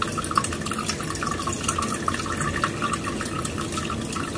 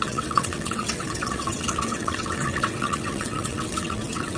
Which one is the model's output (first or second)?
second